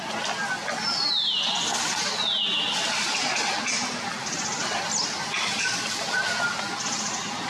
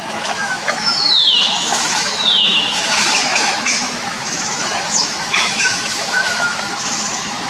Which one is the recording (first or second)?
first